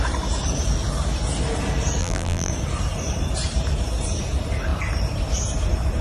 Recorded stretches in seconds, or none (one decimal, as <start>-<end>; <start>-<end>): 0.0-2.0; 2.5-6.0